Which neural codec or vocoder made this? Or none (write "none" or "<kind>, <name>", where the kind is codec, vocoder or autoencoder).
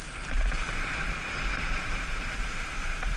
vocoder, BigVGAN v2